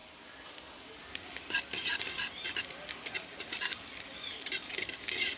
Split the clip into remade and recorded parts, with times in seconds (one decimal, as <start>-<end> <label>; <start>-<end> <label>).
0.0-5.4 recorded